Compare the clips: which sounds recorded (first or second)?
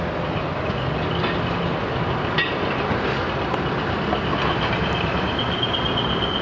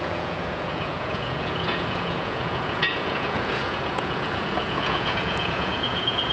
first